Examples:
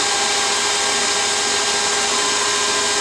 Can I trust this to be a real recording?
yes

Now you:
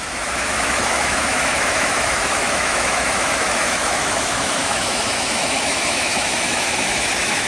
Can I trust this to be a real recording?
no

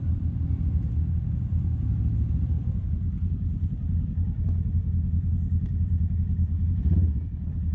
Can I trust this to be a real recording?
yes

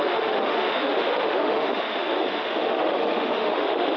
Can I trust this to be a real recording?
no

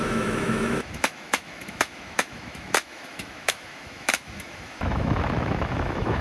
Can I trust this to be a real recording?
no